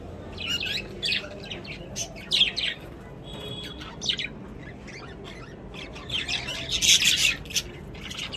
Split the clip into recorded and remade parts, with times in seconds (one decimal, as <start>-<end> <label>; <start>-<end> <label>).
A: 0.0-8.4 recorded